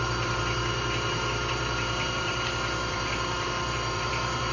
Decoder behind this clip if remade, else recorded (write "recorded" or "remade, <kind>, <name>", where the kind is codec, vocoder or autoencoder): remade, vocoder, BigVGAN v2